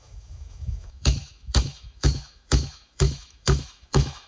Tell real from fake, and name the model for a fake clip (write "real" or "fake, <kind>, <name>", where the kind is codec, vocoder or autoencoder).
fake, autoencoder, DAC-VAE